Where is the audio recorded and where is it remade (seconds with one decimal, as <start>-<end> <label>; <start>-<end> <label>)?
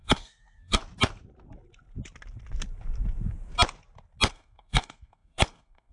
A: 0.0-0.8 remade; 0.8-4.3 recorded; 4.3-5.9 remade